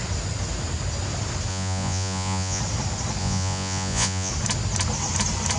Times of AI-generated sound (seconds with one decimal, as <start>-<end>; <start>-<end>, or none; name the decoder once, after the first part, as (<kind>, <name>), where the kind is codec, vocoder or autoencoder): 1.5-2.6 (vocoder, Vocos); 3.2-4.3